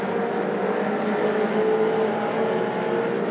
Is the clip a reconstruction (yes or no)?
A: no